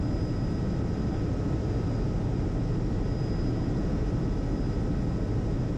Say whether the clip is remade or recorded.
recorded